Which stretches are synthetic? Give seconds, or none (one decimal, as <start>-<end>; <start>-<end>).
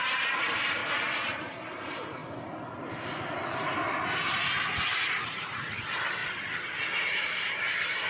0.0-0.8; 1.4-2.2; 4.3-6.2; 7.0-8.1